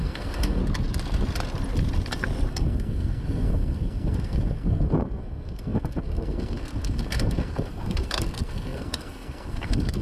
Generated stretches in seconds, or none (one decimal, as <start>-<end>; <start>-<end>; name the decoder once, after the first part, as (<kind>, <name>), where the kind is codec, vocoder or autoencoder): 0.0-0.6 (codec, SNAC); 2.5-10.0